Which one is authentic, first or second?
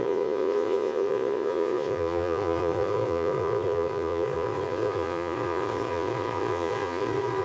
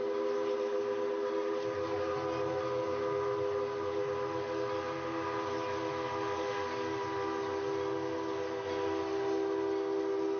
second